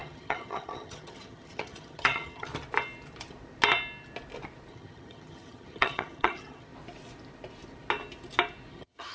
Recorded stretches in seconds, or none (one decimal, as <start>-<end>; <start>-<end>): 2.5-4.7; 6.7-8.7